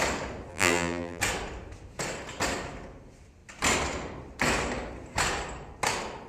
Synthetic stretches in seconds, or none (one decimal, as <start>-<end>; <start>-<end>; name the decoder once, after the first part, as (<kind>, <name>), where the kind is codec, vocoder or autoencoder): 0.5-1.2 (vocoder, BigVGAN v2)